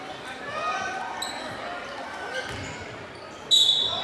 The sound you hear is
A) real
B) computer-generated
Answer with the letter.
A